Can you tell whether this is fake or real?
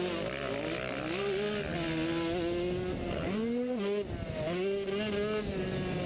real